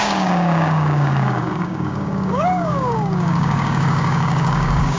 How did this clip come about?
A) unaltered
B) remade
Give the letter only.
B